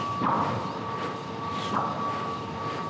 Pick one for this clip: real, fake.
real